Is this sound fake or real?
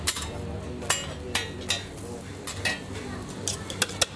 real